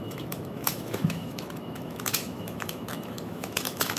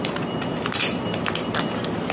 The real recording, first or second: second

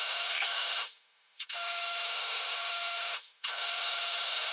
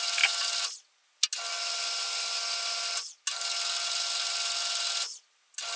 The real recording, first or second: second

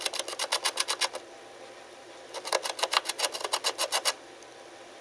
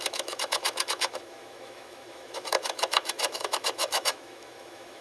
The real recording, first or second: first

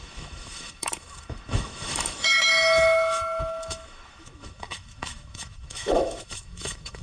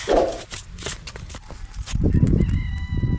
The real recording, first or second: second